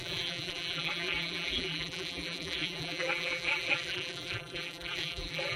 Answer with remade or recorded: remade